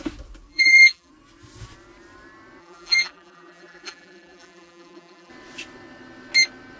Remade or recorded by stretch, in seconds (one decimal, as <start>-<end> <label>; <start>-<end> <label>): 0.0-0.5 recorded; 0.5-1.1 remade; 1.1-2.6 recorded; 2.6-5.3 remade; 5.3-6.8 recorded